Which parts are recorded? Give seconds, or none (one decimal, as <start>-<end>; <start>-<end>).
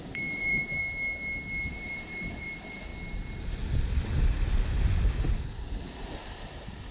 0.8-1.7; 2.9-4.0